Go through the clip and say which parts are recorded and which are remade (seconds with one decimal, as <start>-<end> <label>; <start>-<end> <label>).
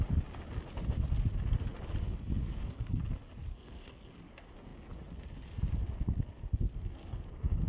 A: 0.0-2.4 recorded; 2.4-3.0 remade; 3.0-3.5 recorded; 3.5-4.1 remade; 4.1-7.7 recorded